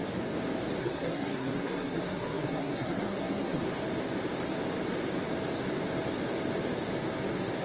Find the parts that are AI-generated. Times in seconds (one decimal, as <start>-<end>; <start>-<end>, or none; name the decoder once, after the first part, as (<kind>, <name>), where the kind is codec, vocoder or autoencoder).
0.8-3.6 (codec, SNAC)